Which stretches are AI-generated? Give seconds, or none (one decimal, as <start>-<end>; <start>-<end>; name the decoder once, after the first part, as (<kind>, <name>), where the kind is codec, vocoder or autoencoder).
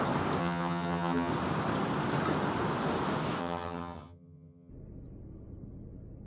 0.4-1.3 (vocoder, HiFi-GAN); 3.4-4.7